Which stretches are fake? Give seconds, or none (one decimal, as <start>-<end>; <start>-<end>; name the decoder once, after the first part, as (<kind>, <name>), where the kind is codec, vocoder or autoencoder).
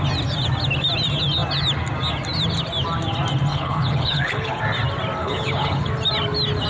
3.5-4.6 (codec, HILCodec); 5.2-5.9